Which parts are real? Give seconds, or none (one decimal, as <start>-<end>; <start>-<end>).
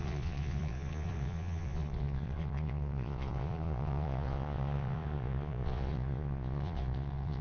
none